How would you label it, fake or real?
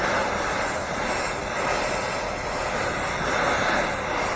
real